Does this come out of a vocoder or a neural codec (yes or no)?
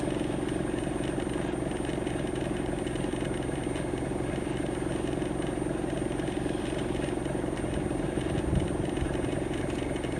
no